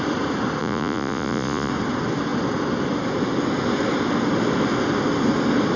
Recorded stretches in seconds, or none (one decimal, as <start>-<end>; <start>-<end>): 0.0-0.6; 1.7-5.8